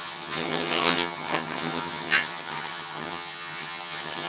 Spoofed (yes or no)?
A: yes